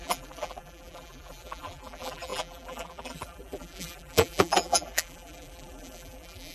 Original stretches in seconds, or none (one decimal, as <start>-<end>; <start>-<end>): none